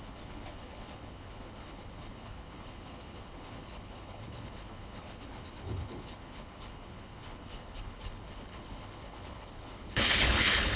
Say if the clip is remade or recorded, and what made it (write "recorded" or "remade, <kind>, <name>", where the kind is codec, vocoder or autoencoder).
remade, codec, HILCodec